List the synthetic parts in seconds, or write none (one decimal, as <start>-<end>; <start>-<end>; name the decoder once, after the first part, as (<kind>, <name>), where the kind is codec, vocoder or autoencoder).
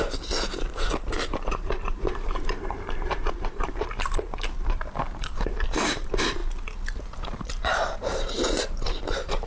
0.0-6.4 (vocoder, BigVGAN v2); 7.0-9.5